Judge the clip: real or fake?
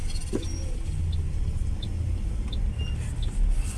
real